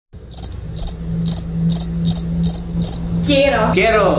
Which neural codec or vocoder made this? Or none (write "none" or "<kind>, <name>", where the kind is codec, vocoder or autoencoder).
none